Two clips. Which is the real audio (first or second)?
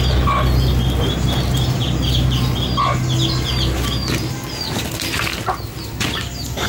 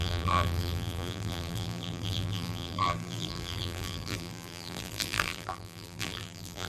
first